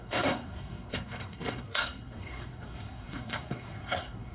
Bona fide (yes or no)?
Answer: no